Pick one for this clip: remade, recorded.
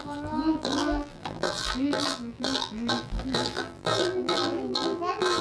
remade